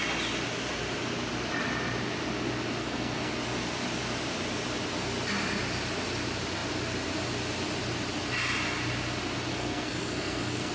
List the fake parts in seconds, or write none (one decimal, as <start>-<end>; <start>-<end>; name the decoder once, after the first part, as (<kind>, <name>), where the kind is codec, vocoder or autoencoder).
2.8-3.3 (codec, SNAC); 9.5-10.7